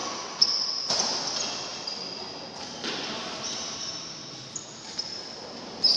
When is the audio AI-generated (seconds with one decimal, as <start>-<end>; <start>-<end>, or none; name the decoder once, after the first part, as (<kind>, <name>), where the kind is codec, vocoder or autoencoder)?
none